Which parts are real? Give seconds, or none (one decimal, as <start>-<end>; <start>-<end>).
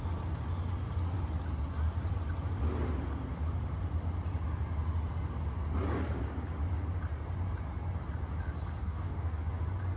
0.0-8.8; 9.5-10.0